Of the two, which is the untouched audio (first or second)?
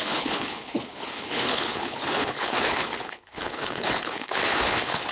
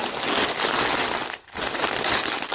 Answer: second